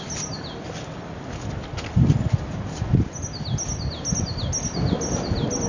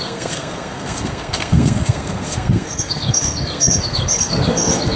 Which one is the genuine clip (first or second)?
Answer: first